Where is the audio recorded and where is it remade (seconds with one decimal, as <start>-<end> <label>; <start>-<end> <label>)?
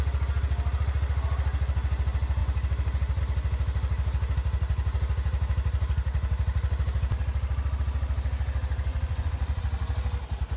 0.0-8.9 recorded; 8.9-9.6 remade; 9.6-10.6 recorded